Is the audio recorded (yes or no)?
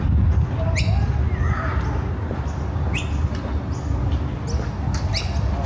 yes